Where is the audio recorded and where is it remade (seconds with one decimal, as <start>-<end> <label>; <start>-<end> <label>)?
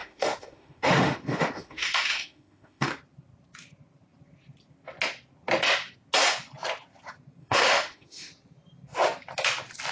0.0-2.9 remade; 2.9-7.4 recorded; 7.4-8.3 remade; 8.3-9.9 recorded